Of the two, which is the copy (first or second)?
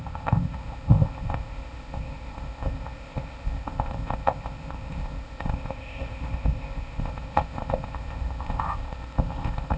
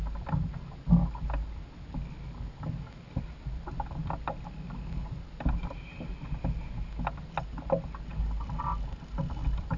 first